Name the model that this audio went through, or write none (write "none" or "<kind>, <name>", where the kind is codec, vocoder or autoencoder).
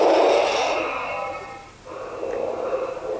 none